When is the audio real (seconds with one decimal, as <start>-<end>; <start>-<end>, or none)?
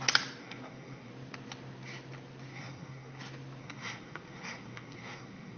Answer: 0.0-0.4; 1.1-2.5; 3.2-3.6